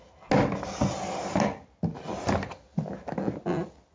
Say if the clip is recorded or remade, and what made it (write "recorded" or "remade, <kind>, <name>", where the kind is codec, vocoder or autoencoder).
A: recorded